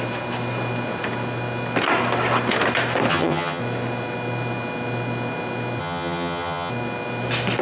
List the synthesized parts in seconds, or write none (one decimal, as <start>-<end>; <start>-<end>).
3.1-3.6; 5.8-6.7